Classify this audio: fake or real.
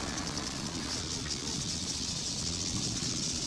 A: fake